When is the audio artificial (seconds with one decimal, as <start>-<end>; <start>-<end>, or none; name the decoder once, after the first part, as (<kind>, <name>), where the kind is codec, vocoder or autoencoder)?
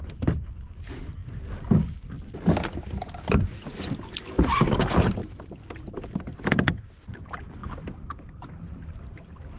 5.2-6.8 (vocoder, BigVGAN v2)